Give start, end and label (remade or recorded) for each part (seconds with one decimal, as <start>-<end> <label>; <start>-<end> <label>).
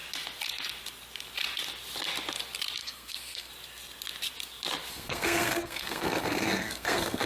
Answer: 0.0-2.8 recorded; 2.8-3.5 remade; 3.5-4.9 recorded; 4.9-7.3 remade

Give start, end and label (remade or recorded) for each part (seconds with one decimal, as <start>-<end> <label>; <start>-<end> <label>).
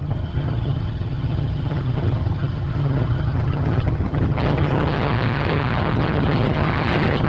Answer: 0.0-7.3 remade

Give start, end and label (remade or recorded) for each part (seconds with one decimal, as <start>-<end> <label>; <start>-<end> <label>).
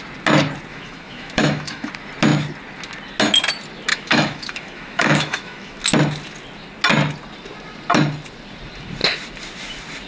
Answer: 0.0-0.7 recorded; 0.7-1.9 remade; 1.9-3.9 recorded; 3.9-5.8 remade; 5.8-10.1 recorded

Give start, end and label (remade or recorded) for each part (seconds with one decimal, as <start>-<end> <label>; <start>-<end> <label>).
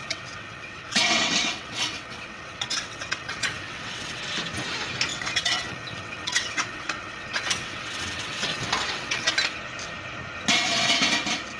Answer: 0.0-4.2 remade; 4.2-5.1 recorded; 5.1-9.3 remade; 9.3-11.6 recorded